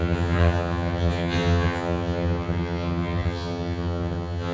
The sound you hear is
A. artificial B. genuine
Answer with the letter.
A